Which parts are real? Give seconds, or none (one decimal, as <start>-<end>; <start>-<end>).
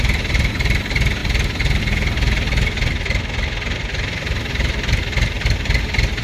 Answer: none